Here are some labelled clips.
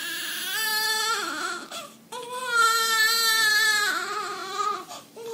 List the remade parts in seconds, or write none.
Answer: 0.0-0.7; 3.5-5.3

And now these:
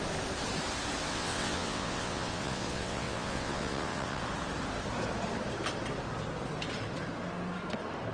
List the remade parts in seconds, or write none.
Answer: 1.1-4.2

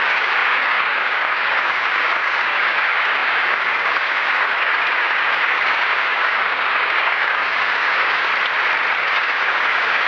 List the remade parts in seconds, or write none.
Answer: 0.0-8.3; 9.0-10.1

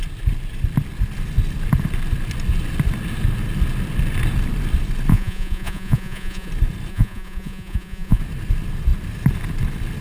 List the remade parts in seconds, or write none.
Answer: 5.1-6.5; 6.9-8.2

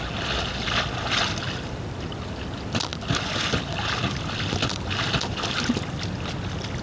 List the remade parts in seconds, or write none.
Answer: none

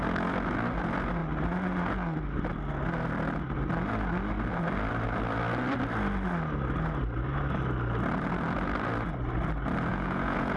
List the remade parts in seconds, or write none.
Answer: 9.9-10.6

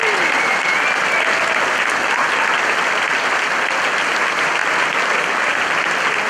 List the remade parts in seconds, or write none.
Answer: none